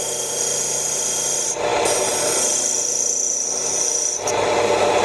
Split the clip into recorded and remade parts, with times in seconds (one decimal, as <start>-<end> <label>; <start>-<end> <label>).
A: 0.0-5.0 recorded